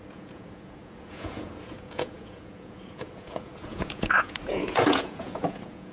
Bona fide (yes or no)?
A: no